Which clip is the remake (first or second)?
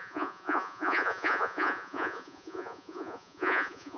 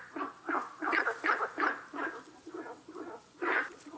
first